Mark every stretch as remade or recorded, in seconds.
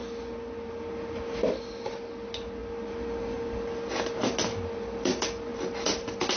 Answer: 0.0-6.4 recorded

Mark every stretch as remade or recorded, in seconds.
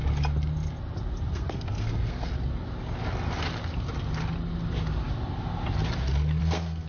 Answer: 0.0-1.3 recorded; 1.3-2.3 remade; 2.3-6.4 recorded; 6.4-6.9 remade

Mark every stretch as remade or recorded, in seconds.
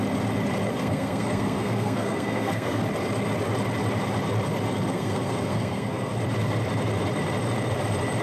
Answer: 0.0-0.7 recorded; 0.7-2.8 remade; 2.8-4.9 recorded; 4.9-6.1 remade; 6.1-8.2 recorded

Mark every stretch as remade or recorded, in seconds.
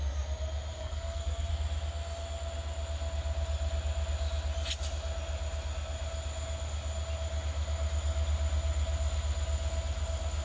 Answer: 0.0-0.8 recorded; 0.8-1.5 remade; 1.5-10.4 recorded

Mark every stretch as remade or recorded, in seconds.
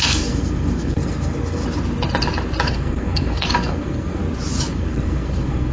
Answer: 0.0-1.6 remade; 1.6-2.7 recorded; 2.7-4.2 remade; 4.2-4.7 recorded; 4.7-5.7 remade